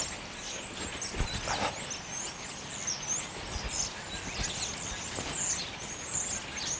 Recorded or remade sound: recorded